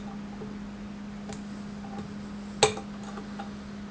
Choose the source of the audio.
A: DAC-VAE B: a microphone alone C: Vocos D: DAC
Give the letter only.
B